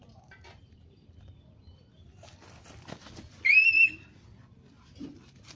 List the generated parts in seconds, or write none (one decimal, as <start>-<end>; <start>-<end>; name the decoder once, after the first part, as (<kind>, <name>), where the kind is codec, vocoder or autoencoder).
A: 0.0-2.3 (vocoder, BigVGAN v2); 4.7-5.6